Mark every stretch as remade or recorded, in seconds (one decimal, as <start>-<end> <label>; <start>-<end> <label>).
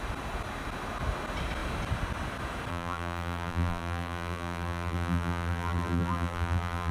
0.0-2.7 recorded; 2.7-6.9 remade